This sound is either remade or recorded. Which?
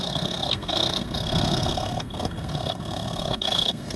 remade